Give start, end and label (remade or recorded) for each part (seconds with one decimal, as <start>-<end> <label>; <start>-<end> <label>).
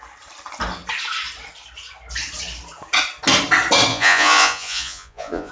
0.0-3.9 recorded; 3.9-5.5 remade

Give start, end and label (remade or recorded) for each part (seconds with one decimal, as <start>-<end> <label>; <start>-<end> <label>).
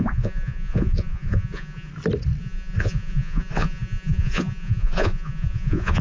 0.0-1.9 remade; 1.9-2.4 recorded; 2.4-6.0 remade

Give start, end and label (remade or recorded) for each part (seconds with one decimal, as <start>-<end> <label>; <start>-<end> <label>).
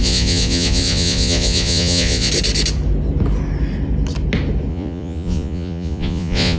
0.0-2.3 remade; 2.3-4.7 recorded; 4.7-6.6 remade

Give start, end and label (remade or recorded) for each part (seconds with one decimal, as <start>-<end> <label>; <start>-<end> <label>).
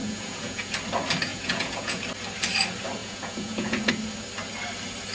0.0-0.7 remade; 0.7-1.3 recorded; 1.3-2.0 remade; 2.0-3.0 recorded; 3.0-3.9 remade; 3.9-5.1 recorded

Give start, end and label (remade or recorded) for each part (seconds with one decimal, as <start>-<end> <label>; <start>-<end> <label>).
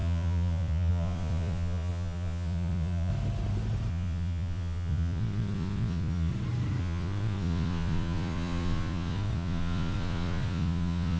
0.0-3.1 remade; 3.1-3.9 recorded; 3.9-6.3 remade; 6.3-6.8 recorded; 6.8-11.2 remade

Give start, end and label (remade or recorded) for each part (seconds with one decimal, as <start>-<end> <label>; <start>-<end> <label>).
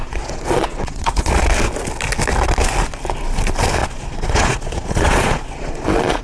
0.0-1.3 remade; 1.3-3.8 recorded; 3.8-6.2 remade